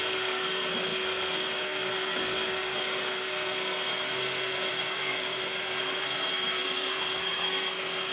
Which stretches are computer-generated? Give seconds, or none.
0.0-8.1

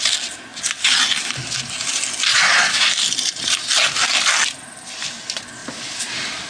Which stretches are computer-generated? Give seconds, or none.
2.3-2.9

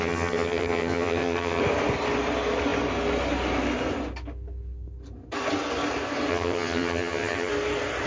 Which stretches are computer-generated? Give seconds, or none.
0.0-1.6; 6.3-7.5

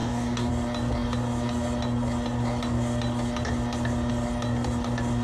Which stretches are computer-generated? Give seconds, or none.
0.0-0.5

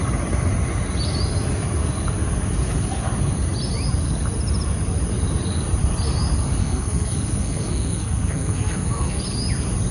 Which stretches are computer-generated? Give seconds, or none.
6.6-9.2

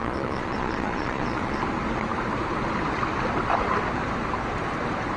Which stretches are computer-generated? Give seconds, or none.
0.0-1.6